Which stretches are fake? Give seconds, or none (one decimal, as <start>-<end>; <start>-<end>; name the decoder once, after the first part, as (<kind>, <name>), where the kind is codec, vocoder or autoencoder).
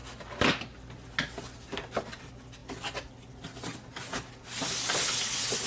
none